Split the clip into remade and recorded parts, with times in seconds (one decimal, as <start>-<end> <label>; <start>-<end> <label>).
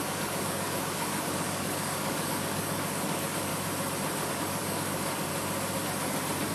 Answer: 0.0-3.5 remade; 3.5-4.3 recorded; 4.3-5.3 remade; 5.3-6.5 recorded